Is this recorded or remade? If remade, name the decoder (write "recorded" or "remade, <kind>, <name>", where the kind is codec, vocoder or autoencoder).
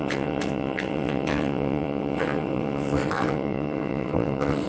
remade, vocoder, WaveNeXt